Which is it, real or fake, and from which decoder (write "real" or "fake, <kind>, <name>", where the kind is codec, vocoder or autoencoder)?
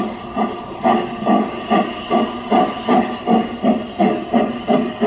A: fake, vocoder, BigVGAN v2